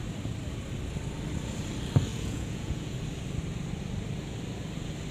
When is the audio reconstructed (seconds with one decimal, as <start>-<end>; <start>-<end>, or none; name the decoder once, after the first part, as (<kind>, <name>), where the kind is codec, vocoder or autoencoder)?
2.1-3.0 (vocoder, Vocos)